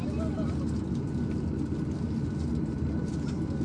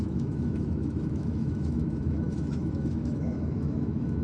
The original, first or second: first